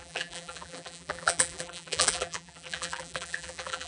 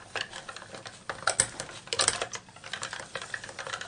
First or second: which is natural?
second